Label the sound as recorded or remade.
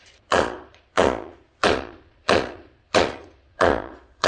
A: remade